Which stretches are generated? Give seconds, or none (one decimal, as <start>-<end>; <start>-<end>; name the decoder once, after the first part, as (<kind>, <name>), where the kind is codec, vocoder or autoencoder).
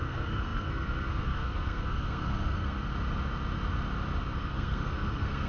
0.0-2.8 (codec, SNAC); 4.4-5.5